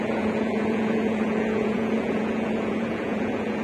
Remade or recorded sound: remade